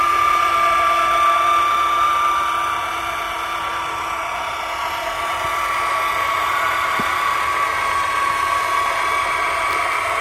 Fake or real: real